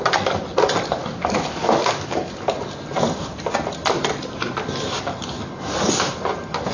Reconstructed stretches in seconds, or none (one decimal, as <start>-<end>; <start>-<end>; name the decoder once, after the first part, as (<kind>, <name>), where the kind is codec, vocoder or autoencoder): 1.0-2.3 (codec, DAC)